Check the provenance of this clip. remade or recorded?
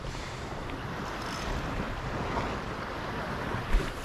remade